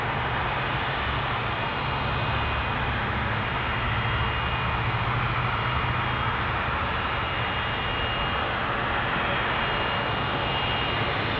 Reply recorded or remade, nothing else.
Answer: recorded